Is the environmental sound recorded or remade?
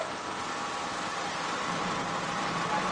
recorded